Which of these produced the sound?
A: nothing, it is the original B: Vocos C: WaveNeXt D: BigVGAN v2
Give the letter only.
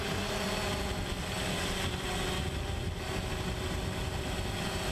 A